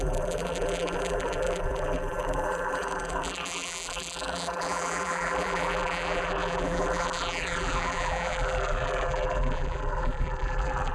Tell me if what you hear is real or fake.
fake